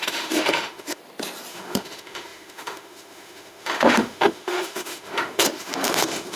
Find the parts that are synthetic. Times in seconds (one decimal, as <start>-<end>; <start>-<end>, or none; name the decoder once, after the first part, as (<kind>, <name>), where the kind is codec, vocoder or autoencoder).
0.0-1.0 (autoencoder, DAC-VAE); 1.5-6.4